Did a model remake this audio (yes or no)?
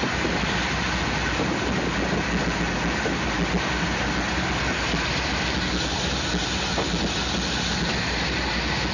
no